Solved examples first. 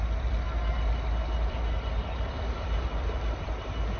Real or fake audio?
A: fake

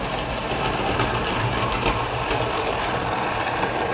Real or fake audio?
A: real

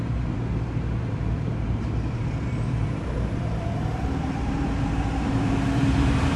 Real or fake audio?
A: fake